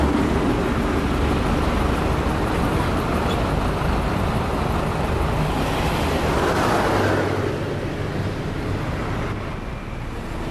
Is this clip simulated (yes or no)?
no